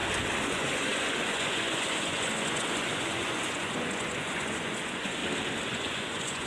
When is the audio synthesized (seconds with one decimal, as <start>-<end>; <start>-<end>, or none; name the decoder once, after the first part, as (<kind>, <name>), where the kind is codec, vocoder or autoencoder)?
0.5-5.2 (vocoder, Vocos); 5.7-6.5